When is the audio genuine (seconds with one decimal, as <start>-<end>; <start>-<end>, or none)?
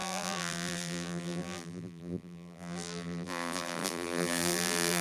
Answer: none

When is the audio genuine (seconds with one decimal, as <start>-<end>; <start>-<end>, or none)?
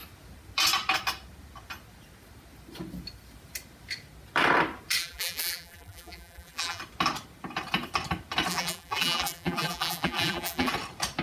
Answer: 0.0-5.0; 6.8-8.5; 10.7-11.2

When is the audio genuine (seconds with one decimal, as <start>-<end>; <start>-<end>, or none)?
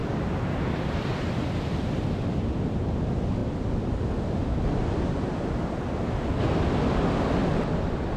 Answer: 2.0-3.4; 3.9-7.4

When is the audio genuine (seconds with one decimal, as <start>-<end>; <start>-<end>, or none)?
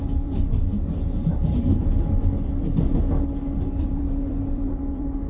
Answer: 0.7-3.9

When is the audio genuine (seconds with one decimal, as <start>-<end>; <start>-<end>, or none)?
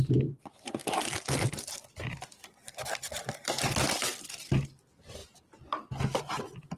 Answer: 0.8-2.5; 5.2-6.2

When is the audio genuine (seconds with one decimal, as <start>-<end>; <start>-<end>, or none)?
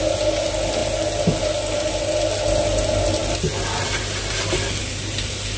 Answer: 0.0-5.6